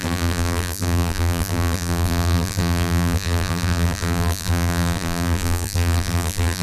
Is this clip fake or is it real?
fake